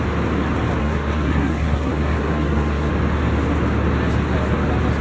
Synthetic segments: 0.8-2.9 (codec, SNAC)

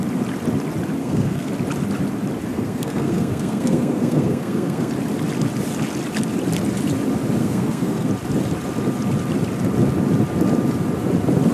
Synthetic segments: 1.0-1.5 (codec, SNAC); 2.5-4.9; 7.4-8.1

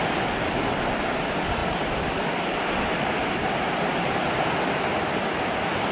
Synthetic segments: none

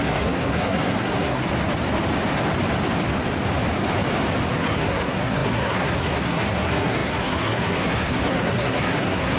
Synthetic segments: 0.0-1.4 (codec, SNAC); 4.6-9.4

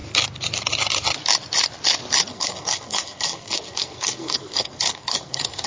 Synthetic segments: 2.3-5.7 (codec, SNAC)